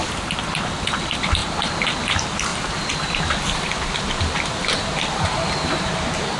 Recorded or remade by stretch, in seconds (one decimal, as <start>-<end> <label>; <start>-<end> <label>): 0.0-1.4 recorded; 1.4-2.0 remade; 2.0-2.5 recorded; 2.5-6.4 remade